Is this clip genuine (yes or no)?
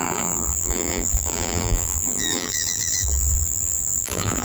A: no